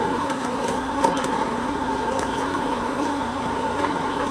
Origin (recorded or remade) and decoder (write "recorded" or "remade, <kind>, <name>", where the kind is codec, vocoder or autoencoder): remade, codec, SNAC